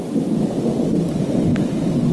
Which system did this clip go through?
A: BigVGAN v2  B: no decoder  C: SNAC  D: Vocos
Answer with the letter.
B